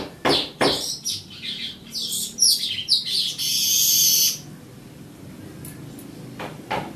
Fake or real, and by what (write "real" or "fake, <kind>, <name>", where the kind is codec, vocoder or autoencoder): real